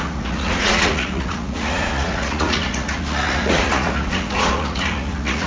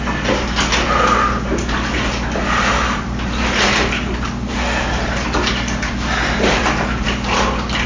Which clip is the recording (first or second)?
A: second